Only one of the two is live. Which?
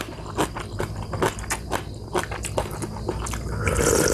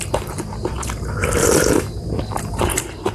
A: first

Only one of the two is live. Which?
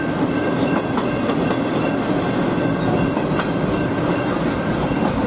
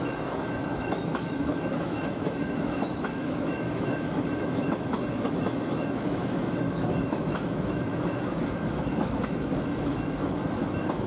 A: first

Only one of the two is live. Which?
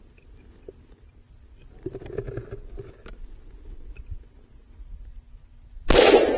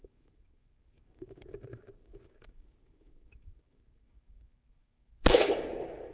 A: first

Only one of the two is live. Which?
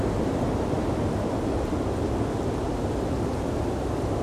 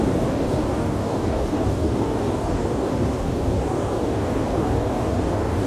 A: first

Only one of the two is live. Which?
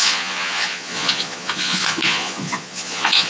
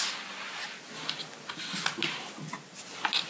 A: second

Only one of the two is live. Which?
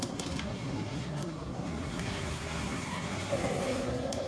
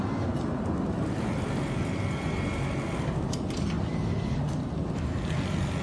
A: second